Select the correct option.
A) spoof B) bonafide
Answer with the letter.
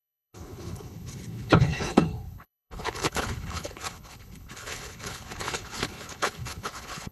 A